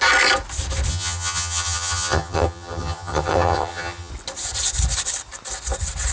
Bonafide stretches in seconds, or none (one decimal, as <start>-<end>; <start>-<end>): 0.0-0.9; 4.1-6.1